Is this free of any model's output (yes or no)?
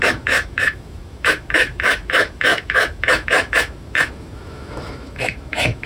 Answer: no